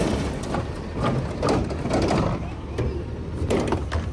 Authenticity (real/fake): real